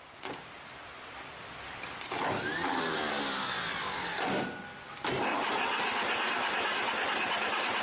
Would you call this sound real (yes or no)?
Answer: yes